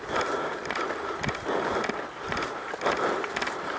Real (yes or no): yes